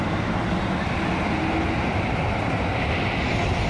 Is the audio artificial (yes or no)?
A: no